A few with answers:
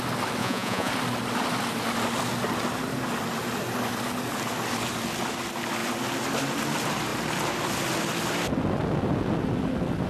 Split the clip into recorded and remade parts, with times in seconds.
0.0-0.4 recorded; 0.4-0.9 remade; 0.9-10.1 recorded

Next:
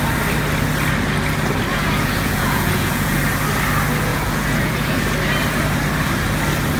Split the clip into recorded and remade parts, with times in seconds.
0.0-1.7 recorded; 1.7-3.2 remade; 3.2-4.1 recorded; 4.1-4.9 remade; 4.9-6.8 recorded

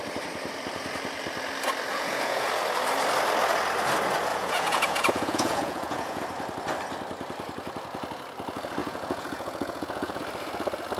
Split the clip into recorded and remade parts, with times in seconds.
0.0-1.9 recorded; 1.9-2.5 remade; 2.5-4.3 recorded; 4.3-6.2 remade; 6.2-8.8 recorded; 8.8-10.2 remade; 10.2-11.0 recorded

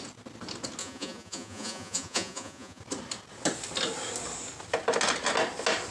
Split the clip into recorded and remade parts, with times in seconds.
0.0-0.8 recorded; 0.8-2.8 remade; 2.8-5.9 recorded

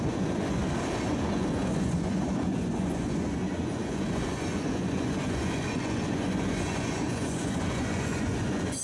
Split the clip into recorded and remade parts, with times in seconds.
0.0-0.6 remade; 0.6-1.1 recorded; 1.1-8.8 remade